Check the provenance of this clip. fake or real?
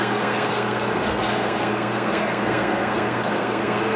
fake